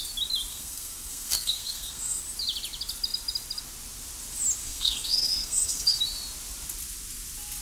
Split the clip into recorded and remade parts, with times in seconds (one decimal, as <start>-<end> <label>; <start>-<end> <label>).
0.0-0.5 recorded; 0.5-2.2 remade; 2.2-4.6 recorded; 4.6-6.0 remade; 6.0-7.6 recorded